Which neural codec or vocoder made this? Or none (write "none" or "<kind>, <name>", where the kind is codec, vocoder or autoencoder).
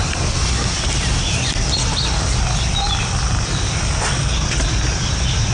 none